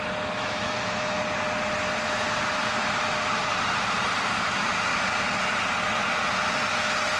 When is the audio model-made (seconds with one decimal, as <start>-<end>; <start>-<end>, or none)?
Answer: 0.4-1.2